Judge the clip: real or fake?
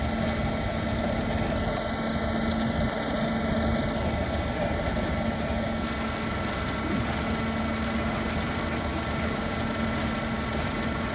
real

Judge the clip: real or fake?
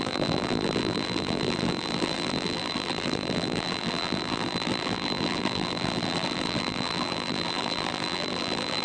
fake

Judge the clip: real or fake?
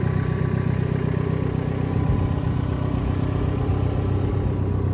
real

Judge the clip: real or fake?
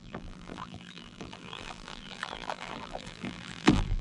fake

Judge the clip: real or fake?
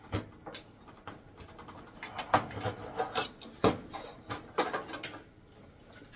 real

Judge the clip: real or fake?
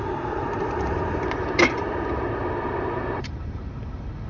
fake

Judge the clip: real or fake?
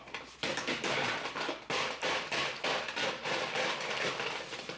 fake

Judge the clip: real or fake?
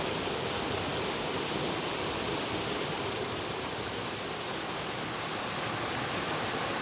real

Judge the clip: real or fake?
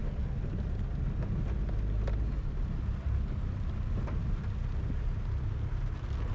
real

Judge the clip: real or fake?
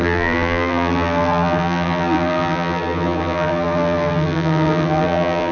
fake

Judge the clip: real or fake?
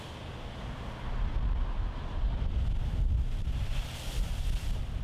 real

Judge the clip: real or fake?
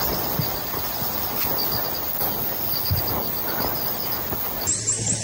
real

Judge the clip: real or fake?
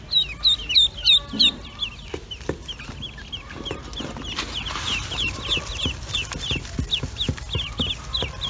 real